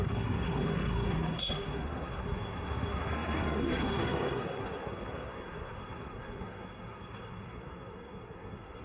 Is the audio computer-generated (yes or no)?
yes